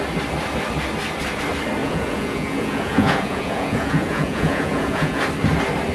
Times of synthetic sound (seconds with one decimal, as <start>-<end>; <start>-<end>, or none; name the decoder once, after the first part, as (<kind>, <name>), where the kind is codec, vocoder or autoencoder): 1.8-5.2 (vocoder, Vocos)